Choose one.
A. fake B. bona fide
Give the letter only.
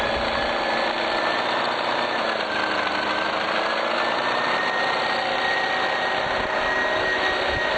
B